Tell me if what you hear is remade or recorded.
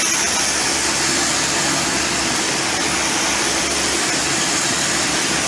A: recorded